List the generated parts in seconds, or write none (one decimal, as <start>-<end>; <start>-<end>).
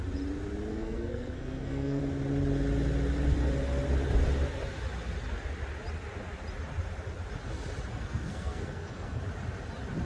0.7-2.0; 7.9-9.2